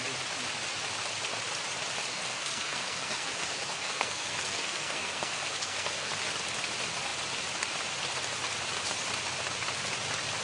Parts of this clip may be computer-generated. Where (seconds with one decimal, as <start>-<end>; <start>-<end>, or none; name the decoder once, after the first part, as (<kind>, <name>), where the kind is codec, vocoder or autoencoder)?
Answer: 2.1-6.1 (codec, SNAC)